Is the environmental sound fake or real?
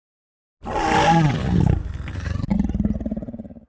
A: real